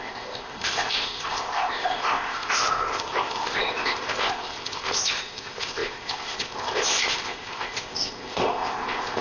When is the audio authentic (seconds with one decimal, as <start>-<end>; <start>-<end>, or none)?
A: none